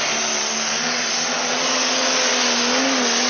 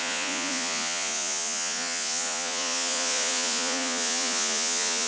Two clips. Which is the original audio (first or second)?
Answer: first